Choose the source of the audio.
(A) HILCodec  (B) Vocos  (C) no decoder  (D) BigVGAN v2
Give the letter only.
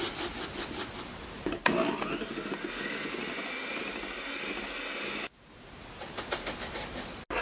C